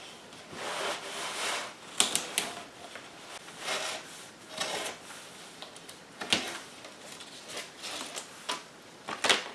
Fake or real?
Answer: real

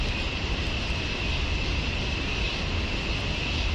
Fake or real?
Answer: real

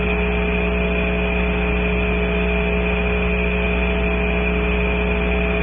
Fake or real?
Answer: real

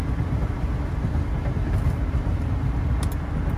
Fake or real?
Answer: real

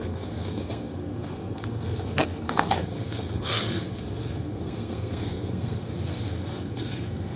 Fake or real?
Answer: fake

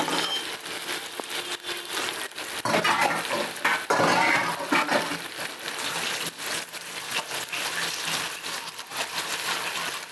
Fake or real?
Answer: real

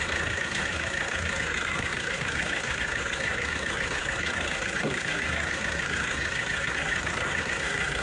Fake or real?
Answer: fake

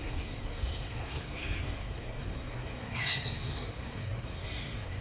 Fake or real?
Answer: fake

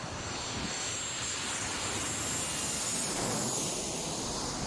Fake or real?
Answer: real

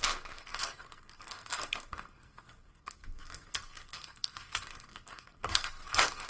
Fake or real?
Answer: fake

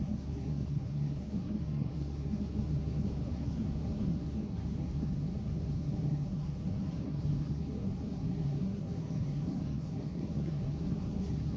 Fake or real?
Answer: fake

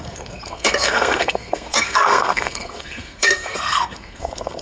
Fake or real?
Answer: fake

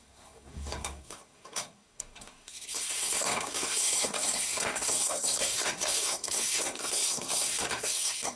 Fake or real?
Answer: fake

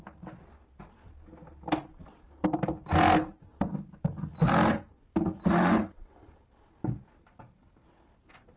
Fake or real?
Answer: real